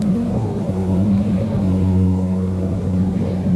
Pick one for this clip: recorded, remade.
remade